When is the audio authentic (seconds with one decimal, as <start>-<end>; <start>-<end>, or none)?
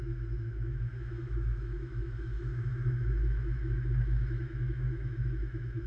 none